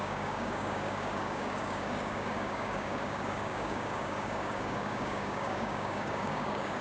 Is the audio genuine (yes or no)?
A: no